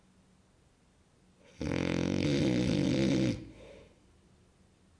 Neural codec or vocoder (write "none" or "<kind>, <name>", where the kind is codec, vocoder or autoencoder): none